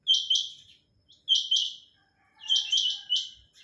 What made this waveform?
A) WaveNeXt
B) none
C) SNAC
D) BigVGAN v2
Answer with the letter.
B